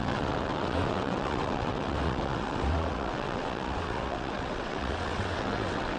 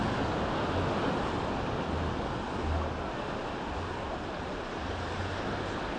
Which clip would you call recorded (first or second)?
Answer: second